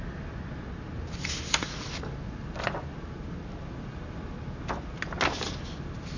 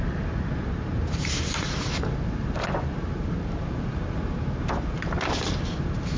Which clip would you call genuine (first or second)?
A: first